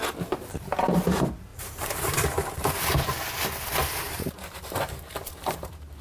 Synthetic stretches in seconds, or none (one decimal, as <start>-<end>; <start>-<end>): 1.5-2.9; 3.8-6.0